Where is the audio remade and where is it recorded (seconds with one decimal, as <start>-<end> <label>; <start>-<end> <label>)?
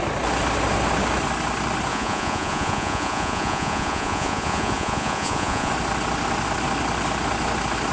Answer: 0.0-1.9 recorded; 1.9-5.7 remade; 5.7-7.9 recorded